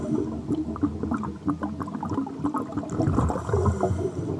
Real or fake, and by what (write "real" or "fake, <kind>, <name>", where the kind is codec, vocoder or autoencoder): real